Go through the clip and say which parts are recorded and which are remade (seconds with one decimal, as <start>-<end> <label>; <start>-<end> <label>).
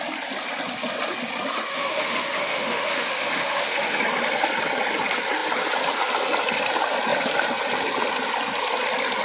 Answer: 0.0-1.7 recorded; 1.7-4.0 remade; 4.0-9.2 recorded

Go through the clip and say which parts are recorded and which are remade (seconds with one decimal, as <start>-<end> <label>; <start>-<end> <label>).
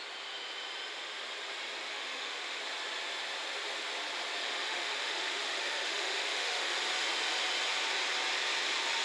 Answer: 0.0-1.9 recorded; 1.9-2.6 remade; 2.6-4.4 recorded; 4.4-6.8 remade; 6.8-9.0 recorded